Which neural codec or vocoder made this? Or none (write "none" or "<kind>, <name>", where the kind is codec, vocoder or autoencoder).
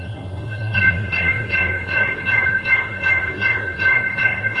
codec, SNAC